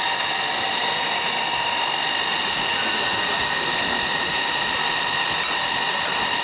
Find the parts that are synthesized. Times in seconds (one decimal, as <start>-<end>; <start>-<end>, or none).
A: 2.3-3.5; 4.1-4.7

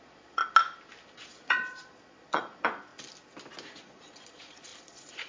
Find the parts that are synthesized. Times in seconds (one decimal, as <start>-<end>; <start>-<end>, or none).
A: 0.0-0.4; 1.1-2.9; 3.8-5.3

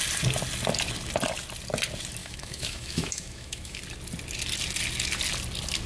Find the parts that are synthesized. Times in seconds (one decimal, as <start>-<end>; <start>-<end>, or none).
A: 2.2-3.8